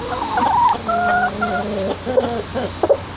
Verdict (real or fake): real